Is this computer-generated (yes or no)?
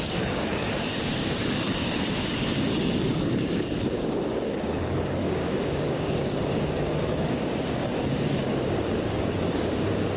yes